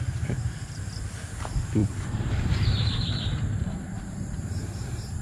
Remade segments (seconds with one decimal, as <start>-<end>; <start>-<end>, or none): 1.8-5.2